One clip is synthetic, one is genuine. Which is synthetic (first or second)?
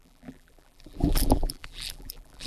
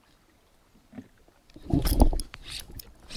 first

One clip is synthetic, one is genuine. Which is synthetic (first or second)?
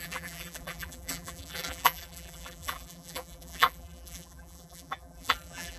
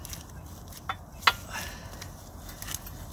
first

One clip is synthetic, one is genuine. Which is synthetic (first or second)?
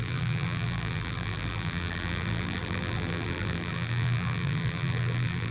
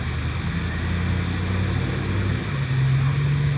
first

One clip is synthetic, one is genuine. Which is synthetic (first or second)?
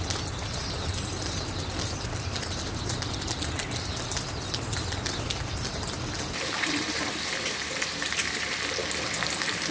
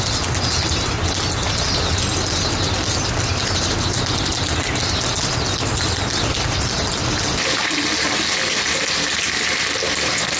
first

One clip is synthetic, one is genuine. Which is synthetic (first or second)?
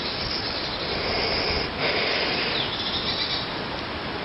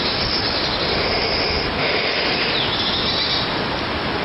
first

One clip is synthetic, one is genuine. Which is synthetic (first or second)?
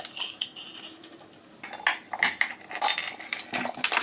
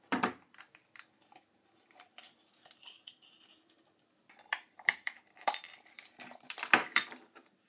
second